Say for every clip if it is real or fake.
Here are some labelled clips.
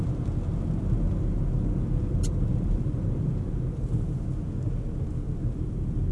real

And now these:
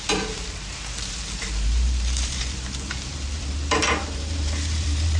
fake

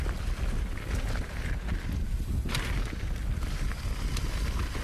real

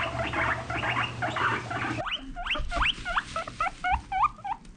real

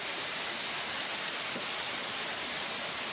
real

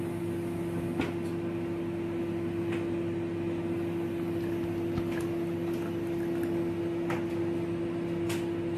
real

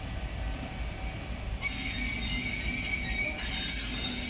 real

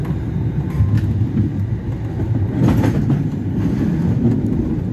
real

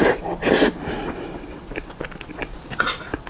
real